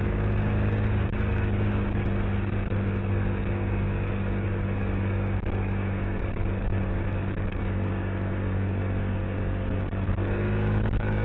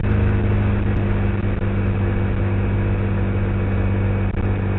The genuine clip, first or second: second